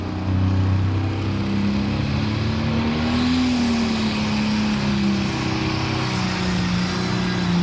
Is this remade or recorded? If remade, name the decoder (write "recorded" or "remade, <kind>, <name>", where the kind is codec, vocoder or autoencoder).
recorded